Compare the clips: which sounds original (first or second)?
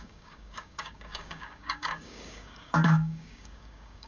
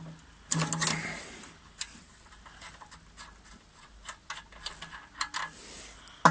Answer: second